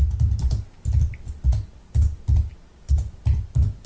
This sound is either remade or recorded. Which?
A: recorded